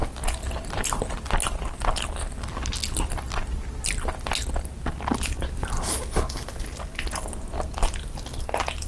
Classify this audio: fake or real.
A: real